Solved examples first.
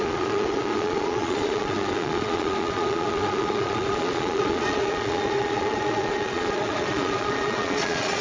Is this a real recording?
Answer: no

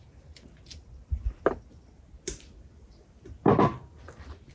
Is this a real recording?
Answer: yes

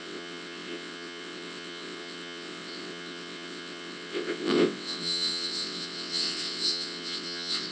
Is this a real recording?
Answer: no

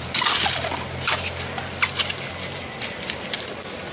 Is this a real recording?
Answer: yes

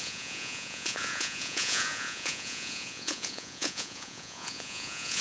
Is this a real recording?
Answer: no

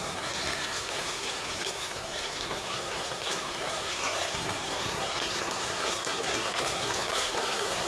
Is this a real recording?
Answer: no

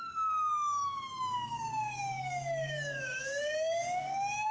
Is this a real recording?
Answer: no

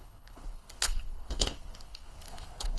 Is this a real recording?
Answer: no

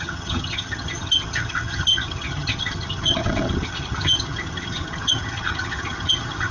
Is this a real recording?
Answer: no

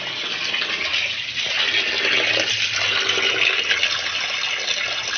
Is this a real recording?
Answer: yes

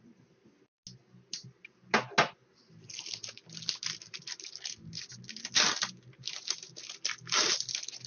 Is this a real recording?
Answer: yes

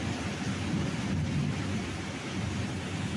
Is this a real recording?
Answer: yes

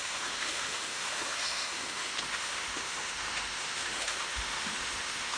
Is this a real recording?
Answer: no